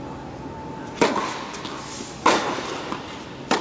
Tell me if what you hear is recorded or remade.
recorded